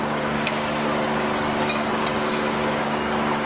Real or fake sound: fake